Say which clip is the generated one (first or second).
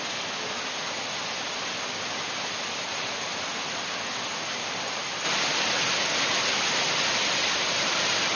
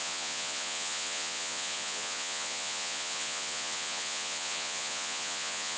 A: second